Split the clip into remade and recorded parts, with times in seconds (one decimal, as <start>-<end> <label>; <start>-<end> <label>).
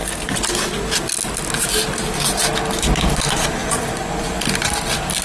0.0-3.6 recorded; 3.6-4.3 remade; 4.3-5.2 recorded